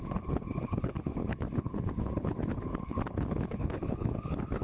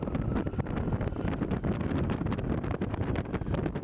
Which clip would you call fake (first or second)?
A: first